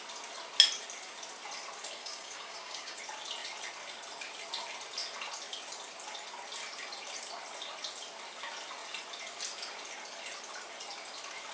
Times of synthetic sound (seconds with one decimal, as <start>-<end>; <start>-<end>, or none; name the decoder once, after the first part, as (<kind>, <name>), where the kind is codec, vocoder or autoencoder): 2.0-3.0 (codec, DAC)